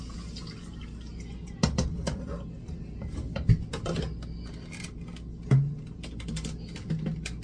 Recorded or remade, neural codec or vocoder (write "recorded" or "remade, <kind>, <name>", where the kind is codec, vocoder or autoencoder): recorded